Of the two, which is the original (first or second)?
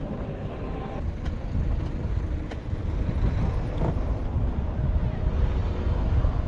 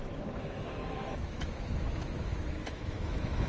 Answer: first